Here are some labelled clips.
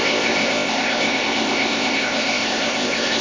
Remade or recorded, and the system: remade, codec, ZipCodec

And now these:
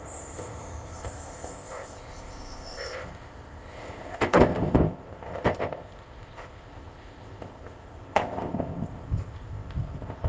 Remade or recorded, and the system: remade, codec, ZipCodec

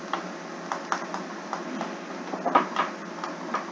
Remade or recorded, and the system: recorded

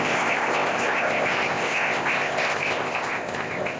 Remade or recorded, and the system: remade, codec, ZipCodec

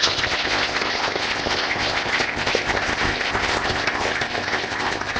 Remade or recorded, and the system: remade, codec, ZipCodec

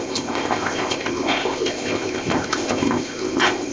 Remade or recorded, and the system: remade, codec, ZipCodec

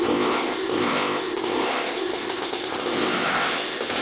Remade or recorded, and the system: remade, codec, ZipCodec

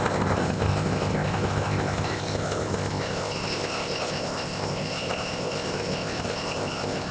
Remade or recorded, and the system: remade, codec, ZipCodec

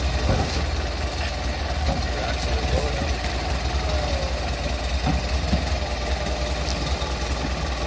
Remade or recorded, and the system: recorded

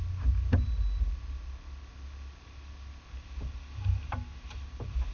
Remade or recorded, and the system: recorded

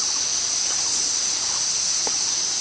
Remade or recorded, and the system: recorded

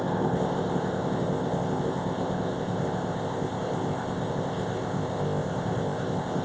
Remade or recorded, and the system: remade, codec, ZipCodec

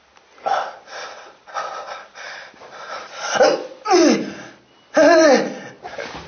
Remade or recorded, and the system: recorded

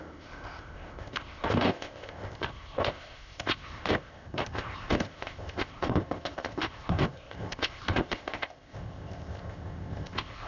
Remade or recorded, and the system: remade, codec, ZipCodec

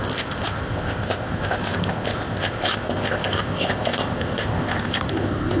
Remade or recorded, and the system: remade, codec, ZipCodec